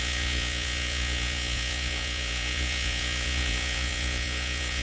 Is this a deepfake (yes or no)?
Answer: yes